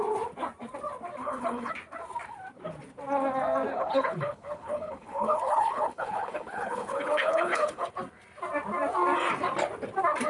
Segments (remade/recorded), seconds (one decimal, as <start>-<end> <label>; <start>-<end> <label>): 0.0-1.2 recorded; 1.2-1.7 remade; 1.7-3.7 recorded; 3.7-7.9 remade; 7.9-10.3 recorded